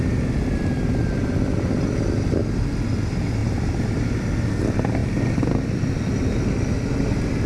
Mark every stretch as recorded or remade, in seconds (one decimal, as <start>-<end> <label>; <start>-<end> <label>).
0.0-7.5 recorded